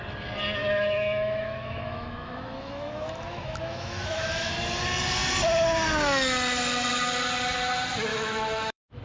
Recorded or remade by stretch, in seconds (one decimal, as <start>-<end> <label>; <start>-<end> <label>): 0.0-0.6 recorded; 0.6-4.5 remade; 4.5-8.1 recorded; 8.1-9.0 remade